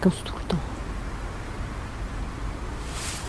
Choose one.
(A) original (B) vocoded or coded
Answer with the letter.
A